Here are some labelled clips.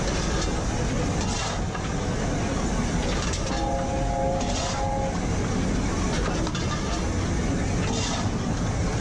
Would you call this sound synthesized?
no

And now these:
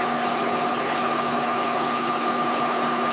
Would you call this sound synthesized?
yes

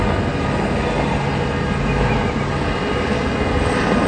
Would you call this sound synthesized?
no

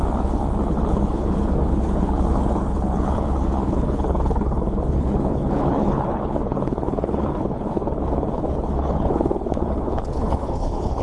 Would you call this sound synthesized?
yes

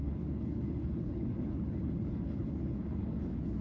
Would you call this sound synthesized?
yes